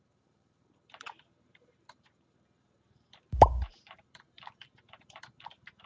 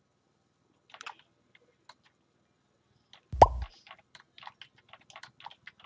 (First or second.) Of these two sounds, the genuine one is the second